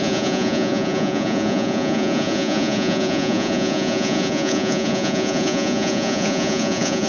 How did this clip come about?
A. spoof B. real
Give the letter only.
A